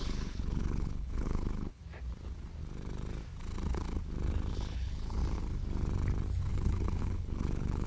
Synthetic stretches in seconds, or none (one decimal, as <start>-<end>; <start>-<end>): 0.0-1.8; 4.5-5.2; 6.5-7.9